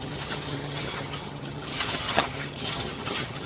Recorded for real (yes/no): no